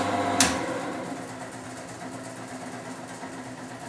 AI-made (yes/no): no